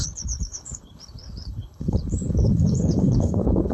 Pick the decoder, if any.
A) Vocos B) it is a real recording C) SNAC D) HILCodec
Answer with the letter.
D